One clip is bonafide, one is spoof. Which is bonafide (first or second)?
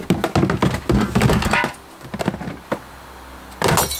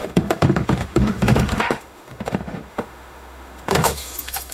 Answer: first